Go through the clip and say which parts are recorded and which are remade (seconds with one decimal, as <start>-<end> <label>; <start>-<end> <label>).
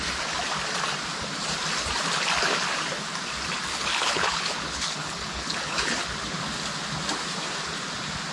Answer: 0.0-3.7 recorded; 3.7-6.4 remade; 6.4-8.3 recorded